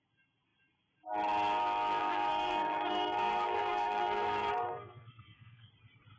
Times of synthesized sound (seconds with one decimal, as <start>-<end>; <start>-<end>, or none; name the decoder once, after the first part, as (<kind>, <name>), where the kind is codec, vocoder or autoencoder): 2.0-5.7 (codec, SNAC)